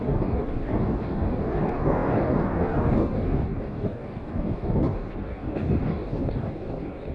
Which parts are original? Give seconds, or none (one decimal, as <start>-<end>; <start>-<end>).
none